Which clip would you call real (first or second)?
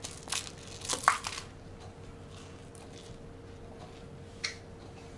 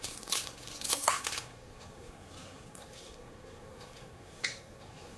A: first